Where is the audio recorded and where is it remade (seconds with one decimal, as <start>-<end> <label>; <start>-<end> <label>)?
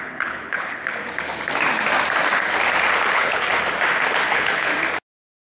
0.0-0.8 remade; 0.8-3.1 recorded; 3.1-3.5 remade; 3.5-4.3 recorded; 4.3-4.7 remade; 4.7-5.5 recorded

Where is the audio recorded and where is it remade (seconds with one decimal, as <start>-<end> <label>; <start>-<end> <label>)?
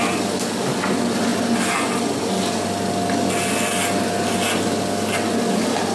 0.0-5.9 recorded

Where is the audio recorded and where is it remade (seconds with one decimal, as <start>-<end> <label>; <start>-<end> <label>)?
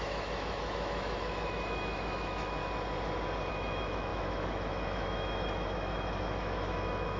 0.0-2.6 remade; 2.6-3.5 recorded; 3.5-7.2 remade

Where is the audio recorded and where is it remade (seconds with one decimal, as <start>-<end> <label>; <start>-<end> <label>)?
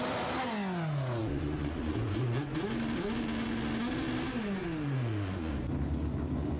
0.0-1.2 recorded; 1.2-2.7 remade; 2.7-4.6 recorded; 4.6-5.5 remade; 5.5-6.6 recorded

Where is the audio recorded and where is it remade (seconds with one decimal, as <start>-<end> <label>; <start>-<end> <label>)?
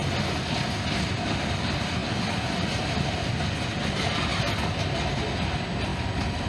0.0-6.5 recorded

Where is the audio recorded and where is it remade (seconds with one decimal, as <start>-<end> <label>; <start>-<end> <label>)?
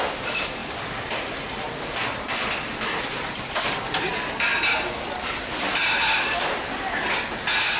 0.0-0.6 recorded; 0.6-3.4 remade; 3.4-7.8 recorded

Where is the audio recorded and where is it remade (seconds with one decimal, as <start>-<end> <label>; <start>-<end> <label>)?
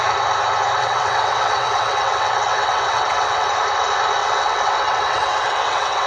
0.0-0.8 recorded; 0.8-3.5 remade; 3.5-4.2 recorded; 4.2-6.1 remade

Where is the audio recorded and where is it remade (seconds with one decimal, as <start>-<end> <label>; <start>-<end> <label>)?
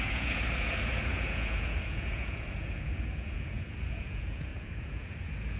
0.0-5.6 remade